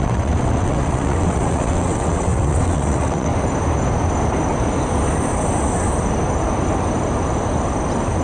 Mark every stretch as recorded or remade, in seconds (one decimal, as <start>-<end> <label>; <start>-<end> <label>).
0.0-3.3 remade; 3.3-8.2 recorded